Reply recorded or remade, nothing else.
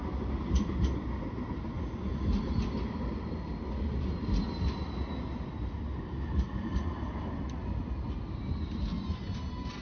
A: recorded